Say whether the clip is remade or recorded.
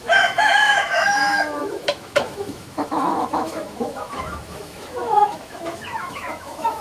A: remade